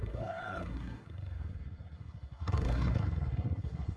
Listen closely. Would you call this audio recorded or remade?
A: remade